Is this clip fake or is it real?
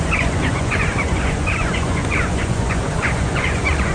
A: fake